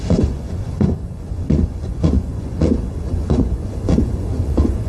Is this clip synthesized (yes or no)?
yes